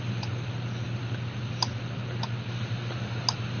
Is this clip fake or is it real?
real